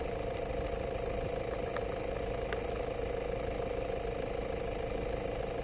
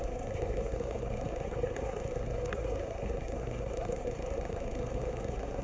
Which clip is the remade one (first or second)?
second